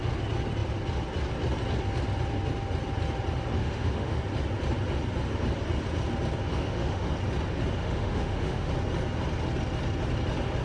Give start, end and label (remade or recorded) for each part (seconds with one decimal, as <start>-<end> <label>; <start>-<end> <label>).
0.0-3.6 recorded; 3.6-4.2 remade; 4.2-6.5 recorded; 6.5-7.1 remade; 7.1-7.8 recorded; 7.8-8.7 remade; 8.7-10.6 recorded